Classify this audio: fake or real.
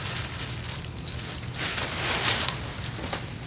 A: real